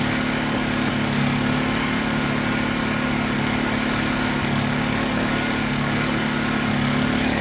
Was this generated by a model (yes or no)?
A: yes